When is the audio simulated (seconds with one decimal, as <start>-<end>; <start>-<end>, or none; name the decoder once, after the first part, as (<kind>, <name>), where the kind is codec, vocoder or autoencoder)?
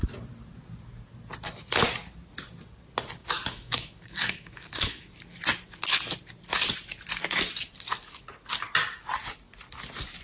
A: 3.2-5.1 (autoencoder, DAC-VAE)